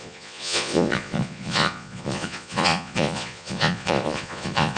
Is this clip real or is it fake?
fake